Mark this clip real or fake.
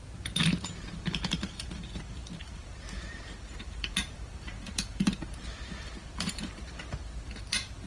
fake